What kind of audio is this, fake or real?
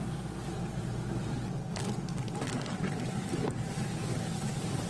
real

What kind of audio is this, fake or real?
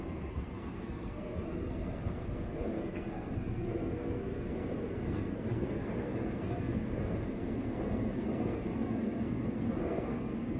fake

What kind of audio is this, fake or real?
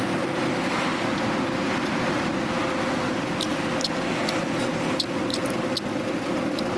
real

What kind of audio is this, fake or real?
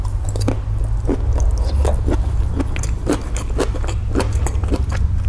real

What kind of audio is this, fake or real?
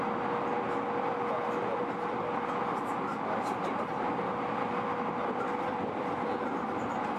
real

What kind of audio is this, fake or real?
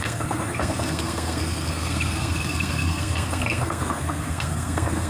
fake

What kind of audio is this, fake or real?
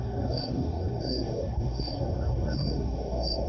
fake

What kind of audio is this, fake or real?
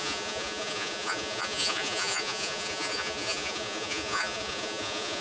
fake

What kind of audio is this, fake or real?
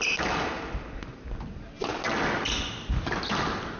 real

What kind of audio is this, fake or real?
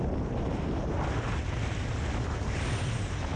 real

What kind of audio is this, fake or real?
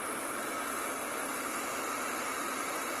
real